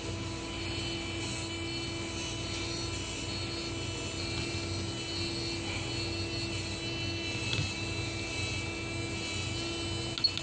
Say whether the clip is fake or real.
real